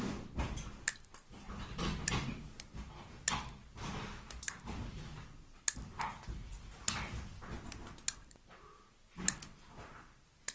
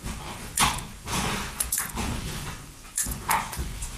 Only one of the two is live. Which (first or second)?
first